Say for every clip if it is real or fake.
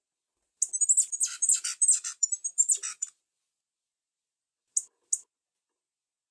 real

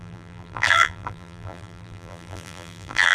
fake